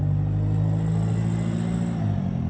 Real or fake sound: real